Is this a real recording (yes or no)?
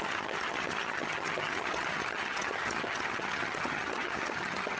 no